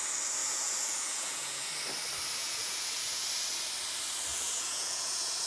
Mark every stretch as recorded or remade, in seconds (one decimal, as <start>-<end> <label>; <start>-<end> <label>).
0.0-0.4 recorded; 0.4-1.7 remade; 1.7-2.4 recorded; 2.4-3.3 remade; 3.3-4.3 recorded; 4.3-5.5 remade